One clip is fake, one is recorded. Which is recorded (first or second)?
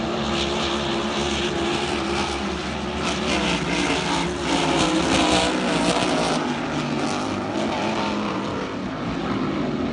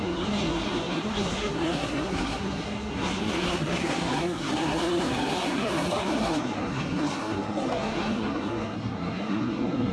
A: first